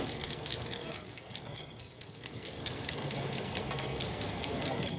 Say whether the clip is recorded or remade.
remade